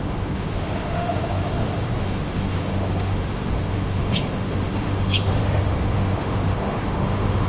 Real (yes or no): no